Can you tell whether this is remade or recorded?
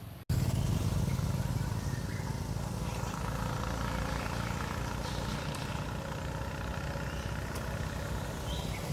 recorded